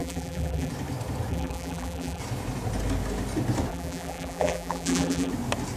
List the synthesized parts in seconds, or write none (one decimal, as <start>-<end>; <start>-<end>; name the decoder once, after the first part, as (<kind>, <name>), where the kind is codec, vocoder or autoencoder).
0.0-0.7 (vocoder, BigVGAN v2); 1.3-2.2; 3.7-5.3